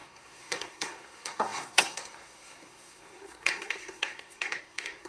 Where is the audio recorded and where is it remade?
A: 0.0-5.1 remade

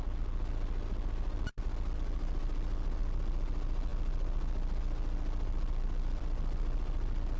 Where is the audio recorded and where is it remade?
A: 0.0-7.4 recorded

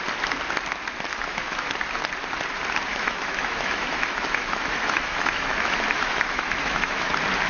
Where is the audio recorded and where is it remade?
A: 0.0-1.1 recorded; 1.1-1.7 remade; 1.7-2.9 recorded; 2.9-7.1 remade; 7.1-7.5 recorded

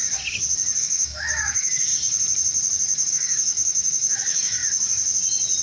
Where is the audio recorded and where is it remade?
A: 0.0-0.8 recorded; 0.8-1.9 remade; 1.9-3.1 recorded; 3.1-4.6 remade; 4.6-5.6 recorded

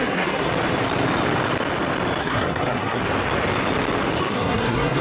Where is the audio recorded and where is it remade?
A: 0.0-0.5 remade; 0.5-2.2 recorded; 2.2-3.0 remade; 3.0-4.2 recorded; 4.2-5.0 remade

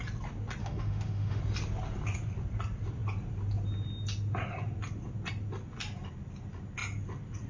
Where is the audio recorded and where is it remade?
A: 0.0-0.6 recorded; 0.6-1.4 remade; 1.4-7.5 recorded

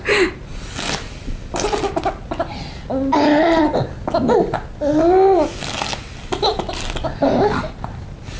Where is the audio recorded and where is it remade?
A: 0.0-8.4 recorded